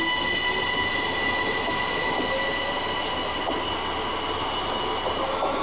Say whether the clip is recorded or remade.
recorded